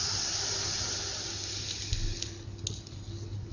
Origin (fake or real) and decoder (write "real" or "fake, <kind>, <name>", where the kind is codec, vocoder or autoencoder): real